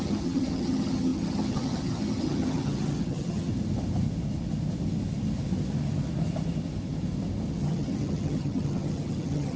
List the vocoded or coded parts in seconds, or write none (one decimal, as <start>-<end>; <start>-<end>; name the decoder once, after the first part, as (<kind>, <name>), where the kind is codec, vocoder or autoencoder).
0.0-3.5 (vocoder, HiFi-GAN); 7.5-9.6